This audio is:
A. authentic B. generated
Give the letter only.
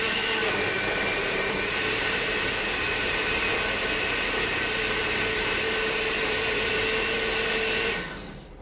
B